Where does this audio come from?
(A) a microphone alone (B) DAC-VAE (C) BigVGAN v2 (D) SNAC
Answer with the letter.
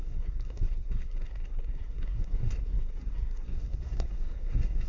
D